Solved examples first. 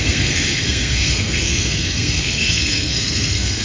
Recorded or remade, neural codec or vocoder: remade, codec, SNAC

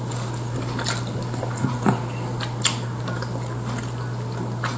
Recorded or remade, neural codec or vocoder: recorded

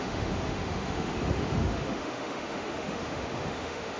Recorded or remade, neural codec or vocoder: remade, autoencoder, DAC-VAE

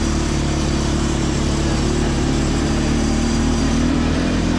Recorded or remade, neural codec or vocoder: remade, vocoder, BigVGAN v2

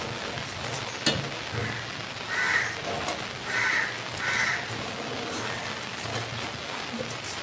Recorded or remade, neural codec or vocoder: recorded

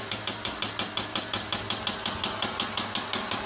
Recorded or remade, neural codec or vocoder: recorded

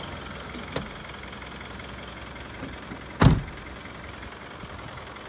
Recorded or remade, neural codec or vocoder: recorded